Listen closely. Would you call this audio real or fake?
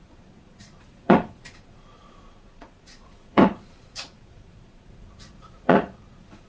fake